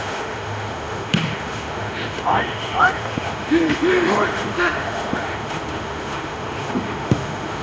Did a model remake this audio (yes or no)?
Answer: yes